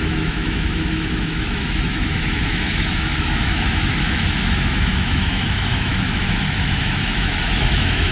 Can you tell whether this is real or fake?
fake